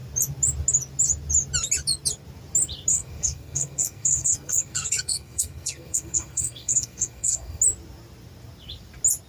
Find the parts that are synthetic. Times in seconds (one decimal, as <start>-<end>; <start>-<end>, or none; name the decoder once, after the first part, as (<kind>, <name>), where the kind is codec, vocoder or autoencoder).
2.9-7.6 (codec, SNAC)